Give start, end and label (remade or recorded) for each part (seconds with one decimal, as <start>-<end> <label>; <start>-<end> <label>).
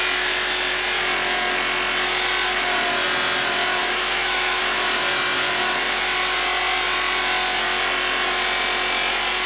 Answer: 0.0-3.8 recorded; 3.8-4.6 remade; 4.6-9.5 recorded